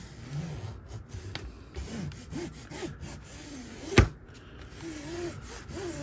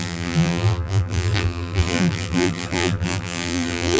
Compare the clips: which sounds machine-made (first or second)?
second